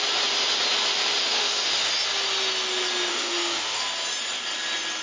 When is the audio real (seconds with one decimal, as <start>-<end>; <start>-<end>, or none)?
0.0-1.2; 1.9-3.1; 3.8-5.0